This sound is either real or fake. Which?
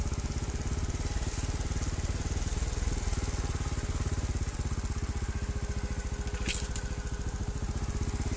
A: real